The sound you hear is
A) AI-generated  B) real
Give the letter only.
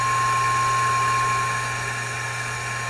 B